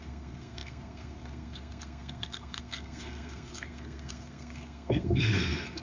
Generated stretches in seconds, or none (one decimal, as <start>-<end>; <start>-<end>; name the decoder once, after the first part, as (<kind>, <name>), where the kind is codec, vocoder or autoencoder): 0.0-5.8 (codec, SNAC)